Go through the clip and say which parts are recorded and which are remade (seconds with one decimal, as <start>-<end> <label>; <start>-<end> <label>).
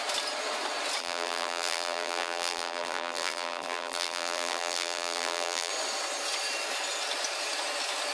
0.0-1.0 recorded; 1.0-5.7 remade; 5.7-8.1 recorded